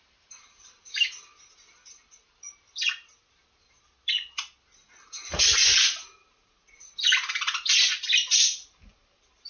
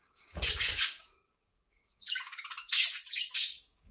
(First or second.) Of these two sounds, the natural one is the first